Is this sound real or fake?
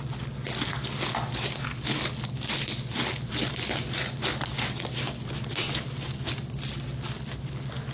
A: real